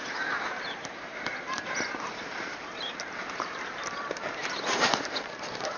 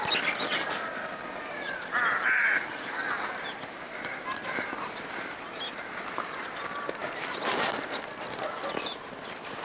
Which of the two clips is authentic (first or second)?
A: second